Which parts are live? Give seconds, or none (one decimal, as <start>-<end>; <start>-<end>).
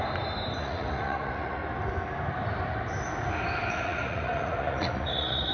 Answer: 0.0-0.6; 1.6-3.7